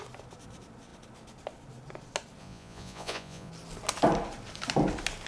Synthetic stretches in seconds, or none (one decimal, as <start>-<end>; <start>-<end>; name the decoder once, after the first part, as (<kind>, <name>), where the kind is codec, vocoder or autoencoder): 2.4-3.5 (vocoder, Vocos)